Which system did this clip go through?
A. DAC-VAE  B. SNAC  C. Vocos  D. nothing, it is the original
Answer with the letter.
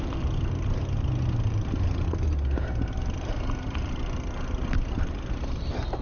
D